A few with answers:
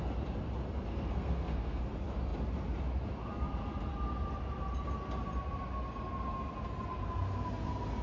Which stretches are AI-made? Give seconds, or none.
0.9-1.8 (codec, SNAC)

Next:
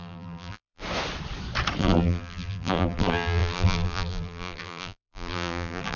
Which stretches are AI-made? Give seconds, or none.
0.0-0.8 (vocoder, BigVGAN v2); 1.8-6.0

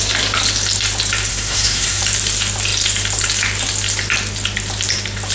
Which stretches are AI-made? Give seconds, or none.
1.3-2.0 (codec, SNAC)

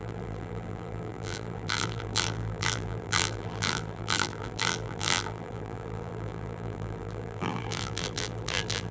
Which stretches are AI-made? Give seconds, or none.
0.0-8.9 (vocoder, BigVGAN v2)

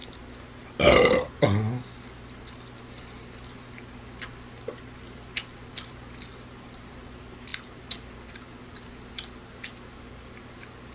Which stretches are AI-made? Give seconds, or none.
none